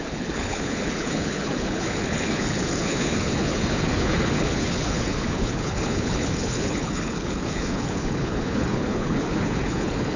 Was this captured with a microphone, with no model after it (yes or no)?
no